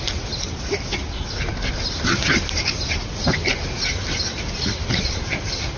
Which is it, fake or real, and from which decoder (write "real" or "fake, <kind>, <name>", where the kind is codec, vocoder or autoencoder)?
real